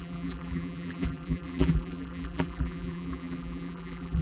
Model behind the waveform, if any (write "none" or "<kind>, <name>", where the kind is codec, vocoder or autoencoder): vocoder, BigVGAN v2